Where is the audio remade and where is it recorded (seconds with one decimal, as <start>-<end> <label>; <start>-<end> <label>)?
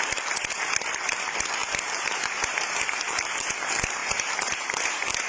0.0-1.6 recorded; 1.6-3.3 remade; 3.3-4.0 recorded; 4.0-5.3 remade